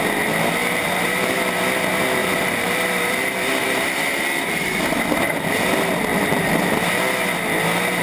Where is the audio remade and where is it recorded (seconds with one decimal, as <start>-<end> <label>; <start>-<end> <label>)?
0.0-0.6 recorded; 0.6-1.3 remade; 1.3-2.2 recorded; 2.2-5.2 remade; 5.2-6.1 recorded; 6.1-6.7 remade; 6.7-8.0 recorded